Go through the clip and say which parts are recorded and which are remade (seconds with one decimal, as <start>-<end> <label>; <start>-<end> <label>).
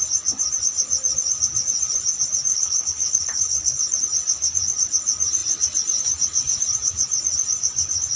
0.0-2.5 recorded; 2.5-4.0 remade; 4.0-8.2 recorded